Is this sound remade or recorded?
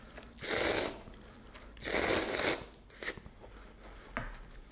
recorded